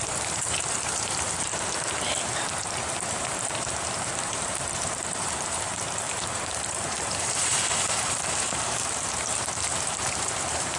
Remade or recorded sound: remade